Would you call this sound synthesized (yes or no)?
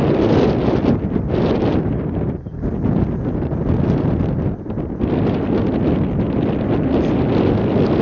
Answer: no